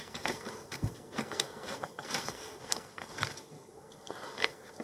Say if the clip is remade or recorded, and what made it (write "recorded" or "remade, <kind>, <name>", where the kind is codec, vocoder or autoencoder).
remade, codec, SNAC